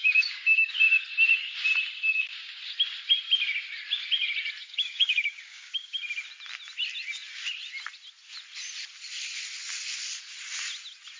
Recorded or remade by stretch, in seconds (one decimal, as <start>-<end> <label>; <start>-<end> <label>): 0.0-0.7 remade; 0.7-2.1 recorded; 2.1-2.6 remade; 2.6-4.6 recorded; 4.6-6.0 remade; 6.0-11.2 recorded